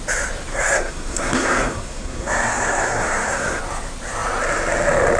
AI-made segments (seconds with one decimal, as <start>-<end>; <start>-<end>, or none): 0.5-3.6